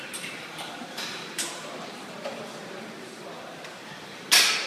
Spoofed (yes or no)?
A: yes